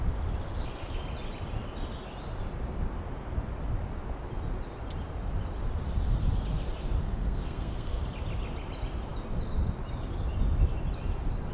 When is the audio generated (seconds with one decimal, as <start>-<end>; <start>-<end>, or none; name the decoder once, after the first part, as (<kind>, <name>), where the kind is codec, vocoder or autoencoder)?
7.0-8.0 (codec, SNAC)